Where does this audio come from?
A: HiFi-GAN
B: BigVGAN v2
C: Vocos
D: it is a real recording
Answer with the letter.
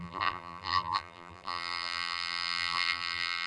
B